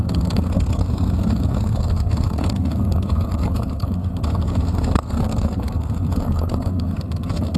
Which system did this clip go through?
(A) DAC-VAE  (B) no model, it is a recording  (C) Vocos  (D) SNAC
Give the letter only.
D